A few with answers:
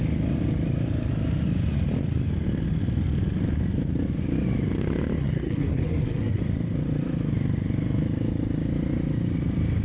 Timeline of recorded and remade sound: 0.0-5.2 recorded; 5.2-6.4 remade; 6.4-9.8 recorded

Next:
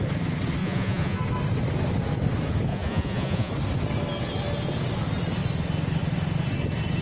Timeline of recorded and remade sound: 0.0-0.6 recorded; 0.6-1.2 remade; 1.2-2.7 recorded; 2.7-3.5 remade; 3.5-7.0 recorded